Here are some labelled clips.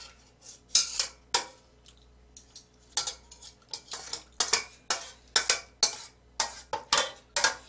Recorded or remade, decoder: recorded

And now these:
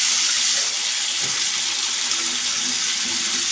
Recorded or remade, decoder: recorded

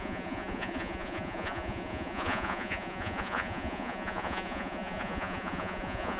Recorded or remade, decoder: remade, vocoder, Vocos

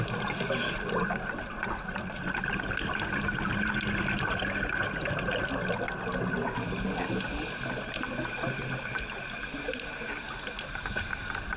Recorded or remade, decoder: recorded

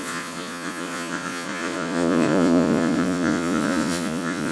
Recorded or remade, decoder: remade, vocoder, Vocos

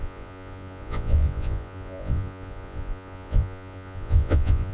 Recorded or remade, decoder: remade, vocoder, Vocos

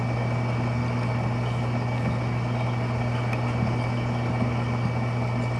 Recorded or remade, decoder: recorded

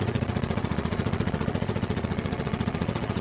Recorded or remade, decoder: remade, vocoder, Vocos